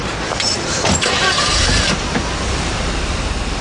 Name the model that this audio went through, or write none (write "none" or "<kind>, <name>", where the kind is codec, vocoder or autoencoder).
none